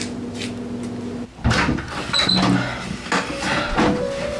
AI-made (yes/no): no